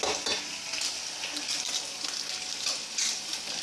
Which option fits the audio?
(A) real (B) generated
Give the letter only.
A